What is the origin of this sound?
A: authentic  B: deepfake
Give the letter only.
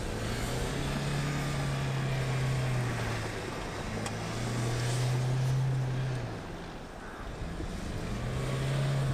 A